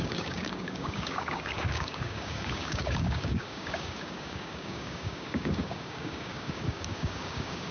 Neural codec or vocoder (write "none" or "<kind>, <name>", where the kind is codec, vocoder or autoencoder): codec, DAC